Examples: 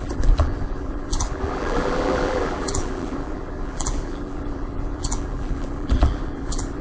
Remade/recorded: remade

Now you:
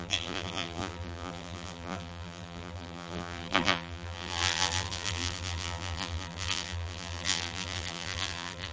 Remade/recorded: remade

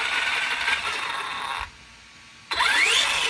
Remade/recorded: recorded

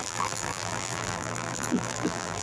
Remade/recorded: remade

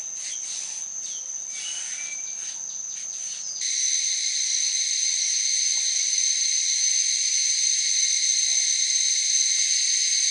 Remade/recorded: recorded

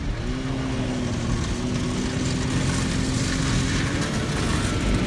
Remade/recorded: recorded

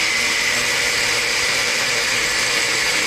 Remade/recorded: remade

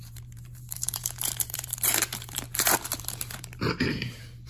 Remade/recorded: remade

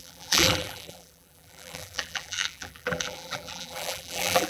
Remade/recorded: remade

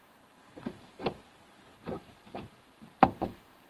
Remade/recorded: remade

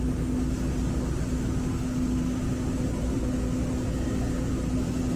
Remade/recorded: recorded